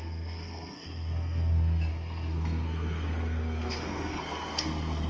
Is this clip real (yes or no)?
no